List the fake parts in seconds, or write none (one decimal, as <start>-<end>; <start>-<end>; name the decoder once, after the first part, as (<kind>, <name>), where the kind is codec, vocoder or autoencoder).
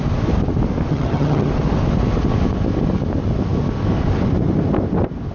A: 0.9-1.5 (vocoder, HiFi-GAN)